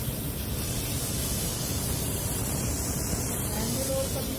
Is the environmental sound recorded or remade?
recorded